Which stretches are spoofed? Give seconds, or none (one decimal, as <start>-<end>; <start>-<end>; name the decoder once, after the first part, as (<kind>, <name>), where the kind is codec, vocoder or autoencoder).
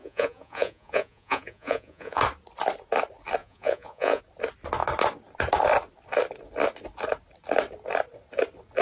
0.0-2.2 (vocoder, Vocos); 3.4-4.2